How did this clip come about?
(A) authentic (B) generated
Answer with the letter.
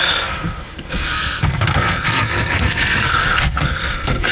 B